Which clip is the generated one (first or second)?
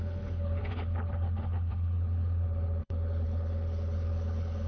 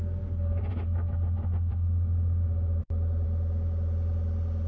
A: first